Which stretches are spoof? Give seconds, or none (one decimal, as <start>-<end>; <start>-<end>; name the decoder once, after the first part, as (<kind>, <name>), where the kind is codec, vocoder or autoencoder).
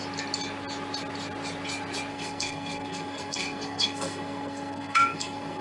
2.1-5.6 (codec, SNAC)